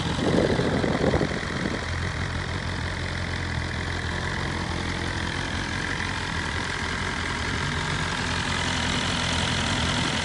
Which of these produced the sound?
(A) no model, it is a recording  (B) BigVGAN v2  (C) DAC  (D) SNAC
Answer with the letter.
A